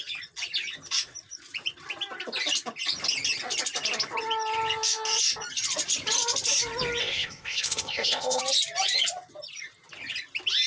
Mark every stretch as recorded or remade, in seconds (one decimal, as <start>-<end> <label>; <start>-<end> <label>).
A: 0.0-7.0 recorded; 7.0-8.4 remade; 8.4-10.7 recorded